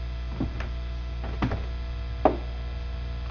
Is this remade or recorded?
recorded